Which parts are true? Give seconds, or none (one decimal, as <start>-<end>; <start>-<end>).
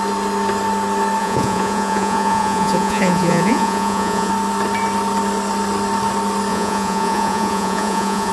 0.0-1.2; 4.3-6.5